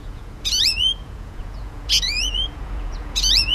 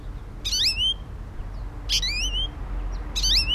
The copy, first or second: first